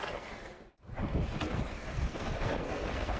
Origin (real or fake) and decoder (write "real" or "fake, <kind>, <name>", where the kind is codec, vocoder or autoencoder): fake, codec, SNAC